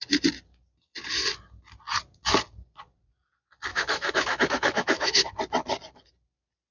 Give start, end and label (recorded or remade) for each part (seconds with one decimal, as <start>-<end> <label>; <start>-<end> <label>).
0.0-3.7 recorded; 3.7-5.3 remade; 5.3-6.7 recorded